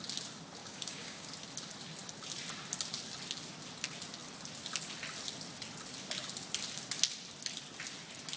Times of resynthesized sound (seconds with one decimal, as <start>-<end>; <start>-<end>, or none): 0.6-1.3